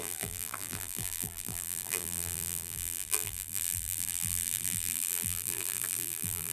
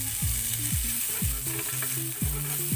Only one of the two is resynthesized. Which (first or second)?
first